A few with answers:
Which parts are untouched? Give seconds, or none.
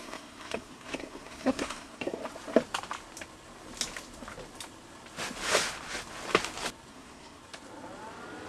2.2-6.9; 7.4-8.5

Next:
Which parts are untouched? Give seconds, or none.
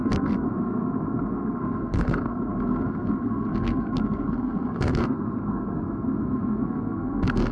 none